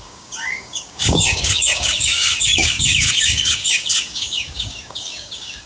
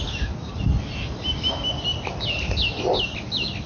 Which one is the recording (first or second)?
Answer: second